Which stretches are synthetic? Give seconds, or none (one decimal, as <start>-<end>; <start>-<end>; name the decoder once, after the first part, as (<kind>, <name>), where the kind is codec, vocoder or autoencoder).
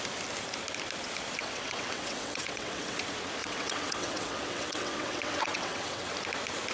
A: 1.4-3.0 (vocoder, WaveNeXt); 3.4-6.1